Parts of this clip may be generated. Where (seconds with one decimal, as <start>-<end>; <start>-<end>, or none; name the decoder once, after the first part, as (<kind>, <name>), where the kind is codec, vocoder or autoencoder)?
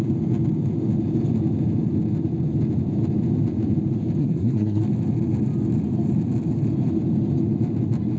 4.2-4.8 (codec, SNAC)